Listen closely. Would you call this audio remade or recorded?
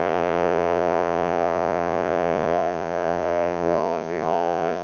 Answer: remade